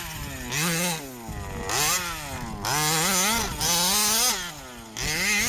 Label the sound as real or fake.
real